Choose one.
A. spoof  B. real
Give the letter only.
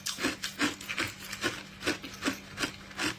B